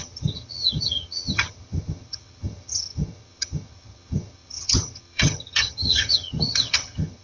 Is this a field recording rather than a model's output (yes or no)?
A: no